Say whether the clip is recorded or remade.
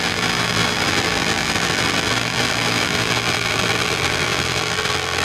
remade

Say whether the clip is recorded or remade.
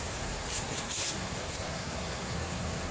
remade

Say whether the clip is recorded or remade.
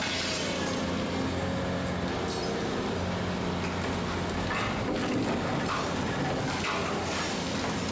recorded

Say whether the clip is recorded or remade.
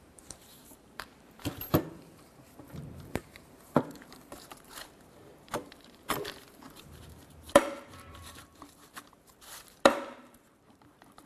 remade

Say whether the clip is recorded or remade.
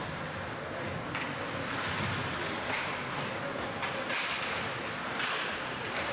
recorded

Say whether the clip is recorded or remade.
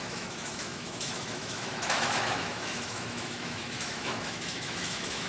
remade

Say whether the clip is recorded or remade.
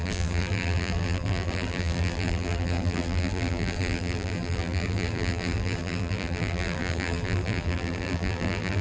remade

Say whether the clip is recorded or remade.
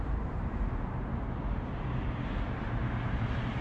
remade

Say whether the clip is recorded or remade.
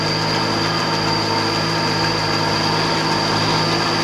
recorded